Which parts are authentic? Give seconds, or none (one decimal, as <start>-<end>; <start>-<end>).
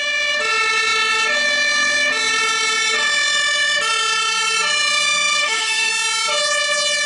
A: 0.0-5.4; 5.9-7.1